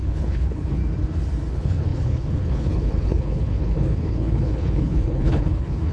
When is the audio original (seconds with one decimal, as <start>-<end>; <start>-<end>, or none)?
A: 0.8-1.5